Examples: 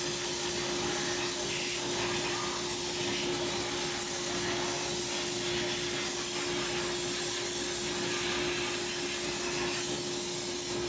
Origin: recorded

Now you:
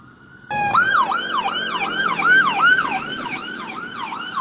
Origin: recorded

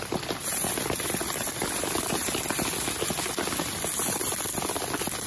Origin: recorded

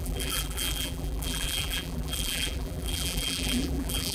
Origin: remade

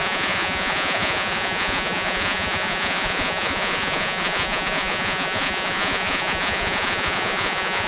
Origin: remade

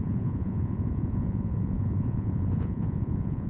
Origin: remade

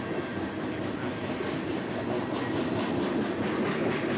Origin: recorded